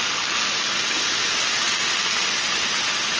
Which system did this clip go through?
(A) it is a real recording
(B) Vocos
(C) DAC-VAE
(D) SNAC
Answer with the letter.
A